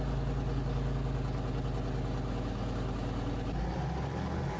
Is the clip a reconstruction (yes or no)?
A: no